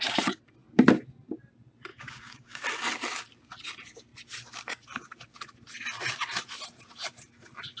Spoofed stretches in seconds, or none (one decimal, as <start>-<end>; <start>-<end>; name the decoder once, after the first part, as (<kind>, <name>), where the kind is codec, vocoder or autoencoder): 1.9-2.6 (codec, DAC)